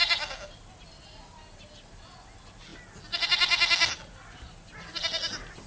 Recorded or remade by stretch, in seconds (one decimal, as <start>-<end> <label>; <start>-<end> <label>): 0.0-5.7 recorded